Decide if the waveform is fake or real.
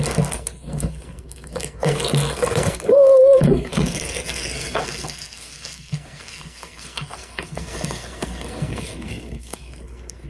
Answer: fake